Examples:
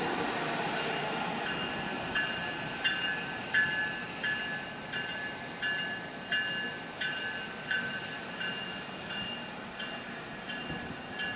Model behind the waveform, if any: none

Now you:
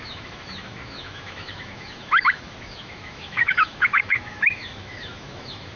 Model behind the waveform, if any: autoencoder, DAC-VAE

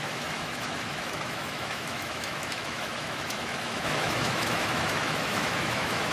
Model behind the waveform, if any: autoencoder, DAC-VAE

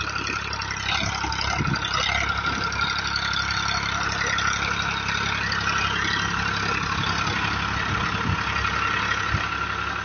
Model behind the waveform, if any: none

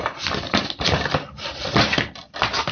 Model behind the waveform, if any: none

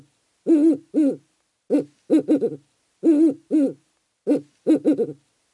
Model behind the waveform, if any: none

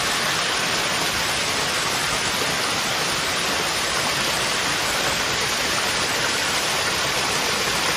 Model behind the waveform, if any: none